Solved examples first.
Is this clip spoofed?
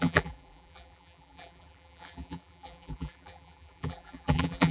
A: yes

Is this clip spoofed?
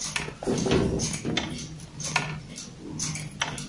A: no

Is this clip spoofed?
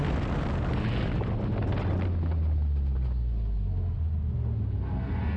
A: no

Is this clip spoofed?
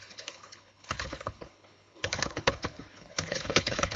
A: yes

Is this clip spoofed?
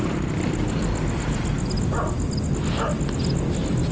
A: no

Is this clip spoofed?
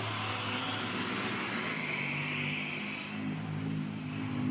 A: no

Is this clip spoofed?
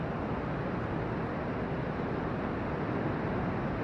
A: no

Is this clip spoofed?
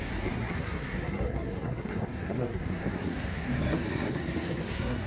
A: yes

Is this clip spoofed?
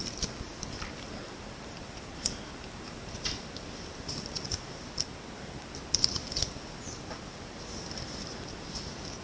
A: no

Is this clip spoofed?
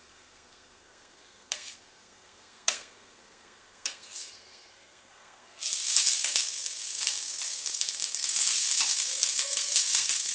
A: yes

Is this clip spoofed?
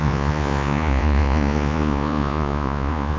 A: yes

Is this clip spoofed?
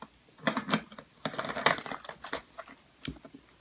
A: no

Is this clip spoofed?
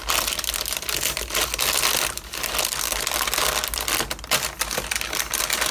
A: no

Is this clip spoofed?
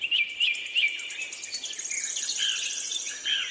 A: no